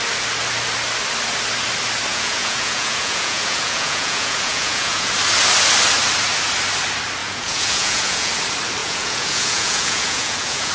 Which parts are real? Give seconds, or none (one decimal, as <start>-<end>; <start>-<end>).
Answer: 0.0-2.1; 5.1-7.2; 8.3-8.8